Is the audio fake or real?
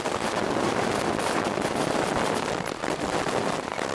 fake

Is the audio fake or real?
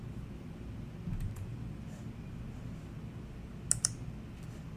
real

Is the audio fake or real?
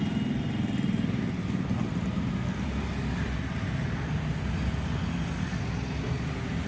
real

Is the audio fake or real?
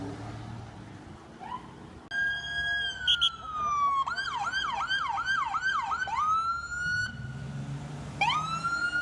real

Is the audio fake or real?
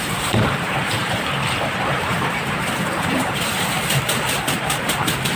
fake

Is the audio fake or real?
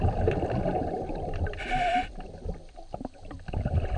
fake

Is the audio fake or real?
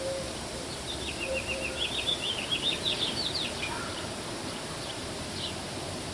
fake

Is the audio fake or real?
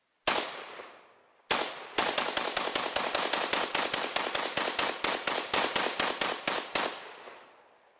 real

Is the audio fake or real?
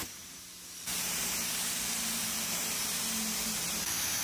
fake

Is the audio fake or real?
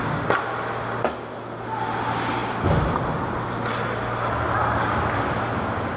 real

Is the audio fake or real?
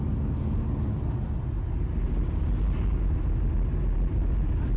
real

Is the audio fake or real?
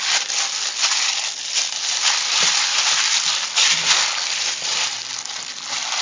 real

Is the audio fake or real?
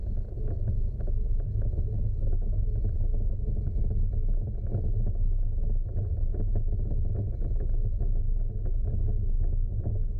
real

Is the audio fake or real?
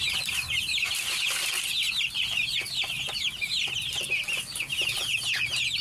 real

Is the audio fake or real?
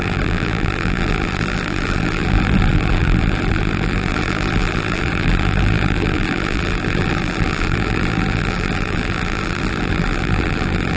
fake